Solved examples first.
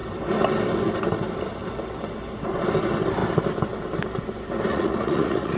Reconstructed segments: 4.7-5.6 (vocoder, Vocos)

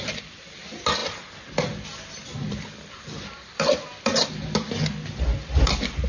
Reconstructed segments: none

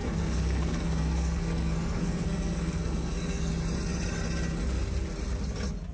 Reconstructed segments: 0.0-3.5 (codec, SNAC)